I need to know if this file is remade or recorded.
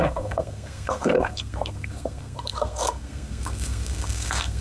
remade